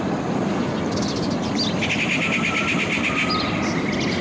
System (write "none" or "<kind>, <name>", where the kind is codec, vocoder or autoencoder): none